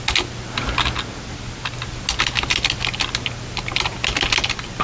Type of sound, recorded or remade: recorded